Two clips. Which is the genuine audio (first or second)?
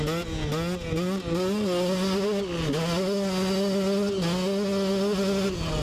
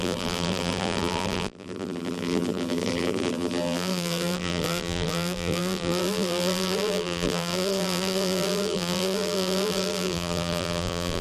first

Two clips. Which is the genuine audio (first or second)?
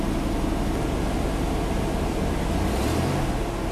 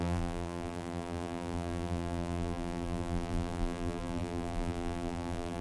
first